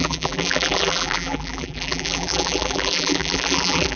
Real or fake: fake